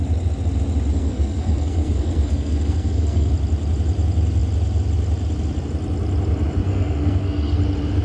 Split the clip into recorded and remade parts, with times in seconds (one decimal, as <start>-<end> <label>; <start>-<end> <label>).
0.0-0.9 recorded; 0.9-3.3 remade; 3.3-6.6 recorded; 6.6-7.6 remade; 7.6-8.0 recorded

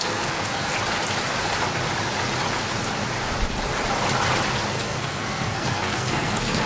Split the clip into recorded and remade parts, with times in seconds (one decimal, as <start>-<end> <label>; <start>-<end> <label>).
0.0-0.7 remade; 0.7-4.7 recorded; 4.7-6.7 remade

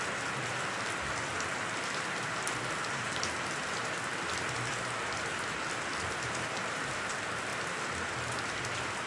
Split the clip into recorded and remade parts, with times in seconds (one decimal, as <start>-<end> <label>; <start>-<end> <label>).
0.0-9.1 recorded

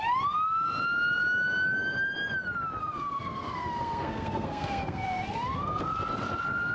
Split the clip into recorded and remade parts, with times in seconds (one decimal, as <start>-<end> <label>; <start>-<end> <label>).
0.0-2.8 recorded; 2.8-5.8 remade; 5.8-6.7 recorded

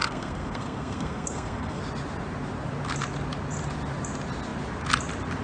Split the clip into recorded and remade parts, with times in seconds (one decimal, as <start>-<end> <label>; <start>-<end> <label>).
0.0-1.8 remade; 1.8-5.4 recorded

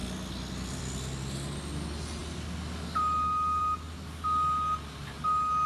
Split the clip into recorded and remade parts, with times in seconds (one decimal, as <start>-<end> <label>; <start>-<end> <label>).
0.0-5.7 recorded

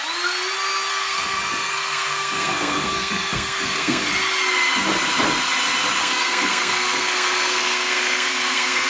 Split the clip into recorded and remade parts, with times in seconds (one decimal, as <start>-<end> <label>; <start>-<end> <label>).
0.0-0.9 recorded; 0.9-4.1 remade; 4.1-6.0 recorded; 6.0-8.9 remade